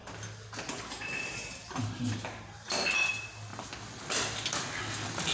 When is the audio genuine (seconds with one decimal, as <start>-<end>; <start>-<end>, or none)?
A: 0.0-5.3